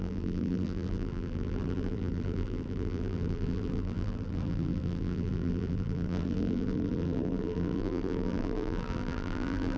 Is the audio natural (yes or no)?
no